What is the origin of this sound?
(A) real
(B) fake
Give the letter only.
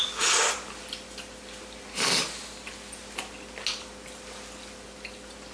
A